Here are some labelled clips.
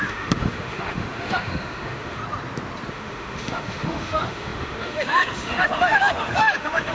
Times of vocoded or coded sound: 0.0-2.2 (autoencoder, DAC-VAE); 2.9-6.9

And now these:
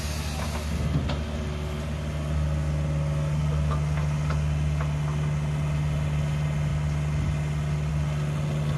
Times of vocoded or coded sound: none

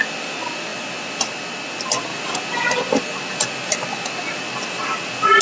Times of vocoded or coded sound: none